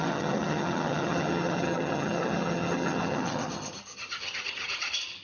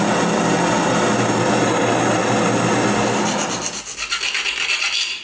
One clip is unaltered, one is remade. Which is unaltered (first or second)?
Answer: second